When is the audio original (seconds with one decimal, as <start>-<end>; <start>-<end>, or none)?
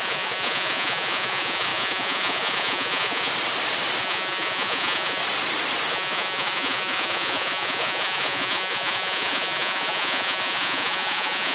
3.3-4.0; 5.2-5.9